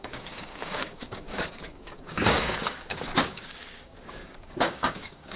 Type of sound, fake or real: fake